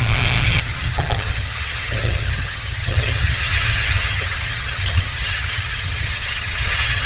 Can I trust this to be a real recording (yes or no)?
no